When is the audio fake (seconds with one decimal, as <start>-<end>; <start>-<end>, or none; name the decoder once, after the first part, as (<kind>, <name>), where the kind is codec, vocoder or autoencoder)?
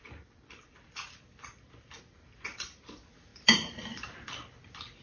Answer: 0.0-5.0 (vocoder, BigVGAN v2)